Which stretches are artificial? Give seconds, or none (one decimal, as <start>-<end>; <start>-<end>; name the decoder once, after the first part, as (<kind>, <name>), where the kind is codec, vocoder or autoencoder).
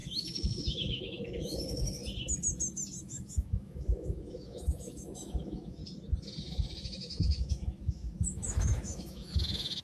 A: 0.0-2.0 (autoencoder, DAC-VAE); 3.0-5.8; 6.4-9.8